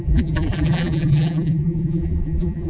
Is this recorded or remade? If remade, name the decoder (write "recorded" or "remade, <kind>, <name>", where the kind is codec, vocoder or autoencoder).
remade, vocoder, BigVGAN v2